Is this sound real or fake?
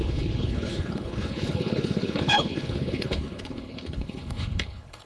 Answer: fake